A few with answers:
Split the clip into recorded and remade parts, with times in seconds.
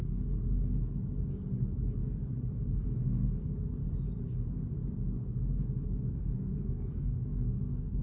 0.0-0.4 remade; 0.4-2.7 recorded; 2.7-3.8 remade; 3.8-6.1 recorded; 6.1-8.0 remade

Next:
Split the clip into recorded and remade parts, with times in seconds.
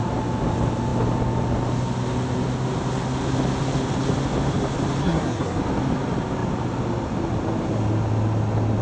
0.0-5.0 recorded; 5.0-5.6 remade; 5.6-8.8 recorded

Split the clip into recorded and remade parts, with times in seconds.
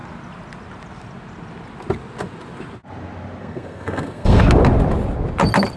0.0-3.4 recorded; 3.4-4.4 remade; 4.4-5.8 recorded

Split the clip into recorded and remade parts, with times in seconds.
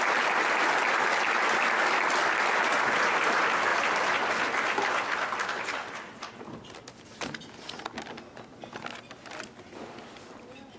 0.0-10.8 recorded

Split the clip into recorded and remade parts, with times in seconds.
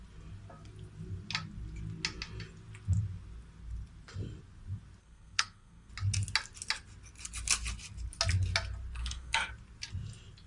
0.0-5.0 recorded; 5.0-5.9 remade; 5.9-9.0 recorded; 9.0-9.5 remade; 9.5-10.5 recorded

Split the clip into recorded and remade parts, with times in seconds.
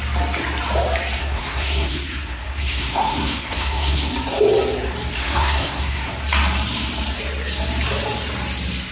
0.0-1.2 recorded; 1.2-4.1 remade; 4.1-5.2 recorded; 5.2-6.1 remade; 6.1-8.9 recorded